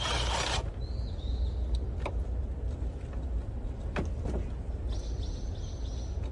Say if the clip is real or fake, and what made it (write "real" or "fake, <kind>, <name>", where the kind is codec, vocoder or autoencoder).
real